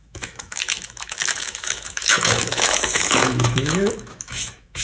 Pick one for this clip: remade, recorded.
remade